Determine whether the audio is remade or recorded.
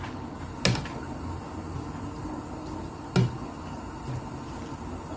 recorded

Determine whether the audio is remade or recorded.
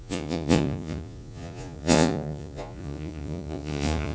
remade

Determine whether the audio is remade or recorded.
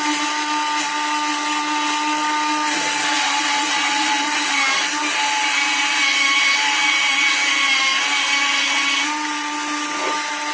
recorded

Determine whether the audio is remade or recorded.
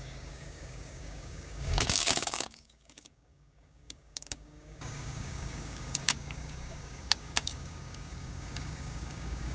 remade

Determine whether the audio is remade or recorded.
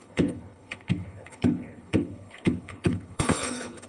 remade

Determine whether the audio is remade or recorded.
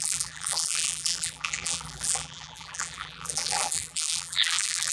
remade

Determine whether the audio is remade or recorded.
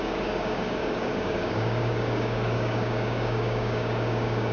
remade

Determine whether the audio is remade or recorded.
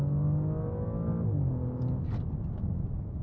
recorded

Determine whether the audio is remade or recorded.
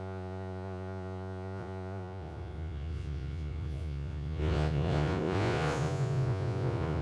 remade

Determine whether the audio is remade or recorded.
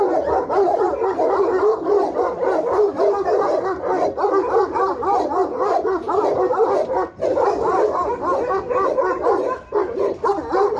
recorded